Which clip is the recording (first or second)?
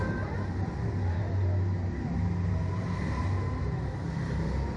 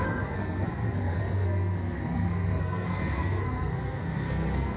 first